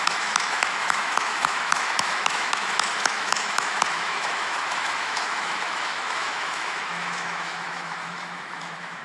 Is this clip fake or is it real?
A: fake